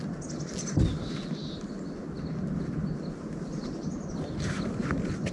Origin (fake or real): real